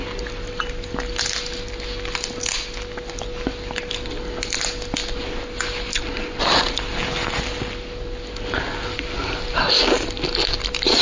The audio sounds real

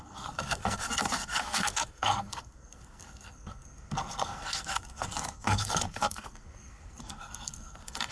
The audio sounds fake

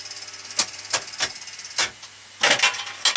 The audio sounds real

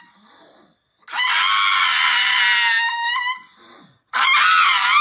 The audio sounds real